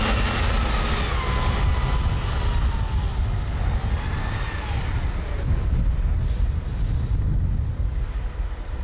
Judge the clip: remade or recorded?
recorded